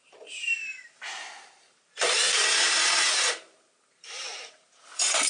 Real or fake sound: fake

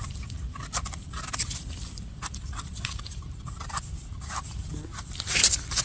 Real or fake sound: fake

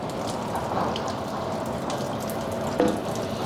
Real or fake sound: real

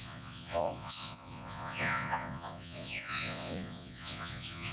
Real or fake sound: fake